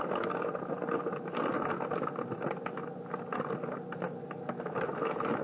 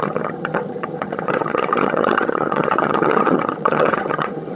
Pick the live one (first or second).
first